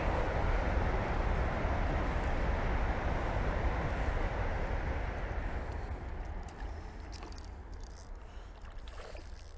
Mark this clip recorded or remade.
recorded